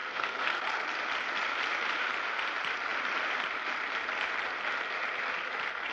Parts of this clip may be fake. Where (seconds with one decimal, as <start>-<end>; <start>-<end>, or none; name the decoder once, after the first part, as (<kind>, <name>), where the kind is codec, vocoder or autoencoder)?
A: 0.0-0.6 (codec, SNAC)